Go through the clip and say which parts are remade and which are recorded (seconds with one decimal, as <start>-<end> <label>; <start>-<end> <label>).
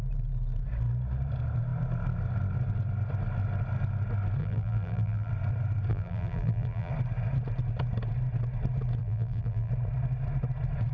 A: 0.0-4.4 recorded; 4.4-5.3 remade; 5.3-5.9 recorded; 5.9-6.9 remade; 6.9-9.0 recorded; 9.0-9.7 remade; 9.7-10.9 recorded